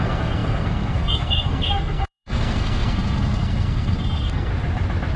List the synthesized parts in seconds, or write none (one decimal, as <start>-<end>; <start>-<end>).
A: 0.0-4.5